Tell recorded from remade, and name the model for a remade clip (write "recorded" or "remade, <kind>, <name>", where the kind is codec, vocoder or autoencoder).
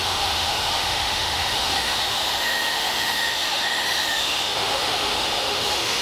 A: remade, autoencoder, DAC-VAE